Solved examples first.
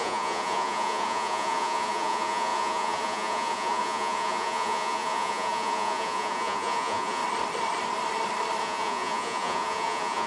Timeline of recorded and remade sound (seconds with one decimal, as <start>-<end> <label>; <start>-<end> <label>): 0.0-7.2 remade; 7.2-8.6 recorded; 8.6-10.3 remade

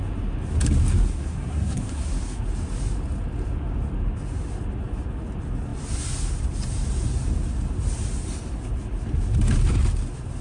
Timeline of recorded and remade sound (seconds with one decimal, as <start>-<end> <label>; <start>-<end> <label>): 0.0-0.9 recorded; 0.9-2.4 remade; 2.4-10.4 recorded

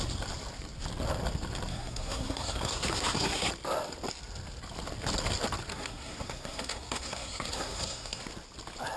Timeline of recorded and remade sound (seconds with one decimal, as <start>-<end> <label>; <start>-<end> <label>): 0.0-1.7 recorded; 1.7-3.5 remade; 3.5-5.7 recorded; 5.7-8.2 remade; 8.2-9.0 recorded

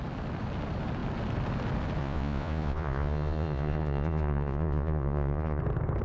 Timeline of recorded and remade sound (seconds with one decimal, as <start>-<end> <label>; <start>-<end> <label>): 0.0-2.0 recorded; 2.0-5.6 remade; 5.6-6.0 recorded

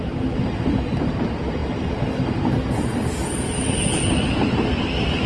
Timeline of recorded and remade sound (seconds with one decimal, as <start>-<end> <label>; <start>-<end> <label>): 0.0-5.3 recorded

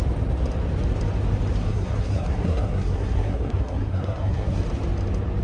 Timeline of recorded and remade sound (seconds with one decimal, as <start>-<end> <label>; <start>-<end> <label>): 0.0-1.6 recorded; 1.6-4.6 remade; 4.6-5.4 recorded

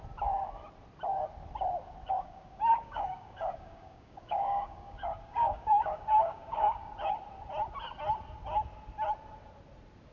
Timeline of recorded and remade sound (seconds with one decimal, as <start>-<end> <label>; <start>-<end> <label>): 0.0-2.0 recorded; 2.0-6.9 remade; 6.9-10.1 recorded